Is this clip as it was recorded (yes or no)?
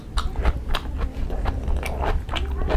yes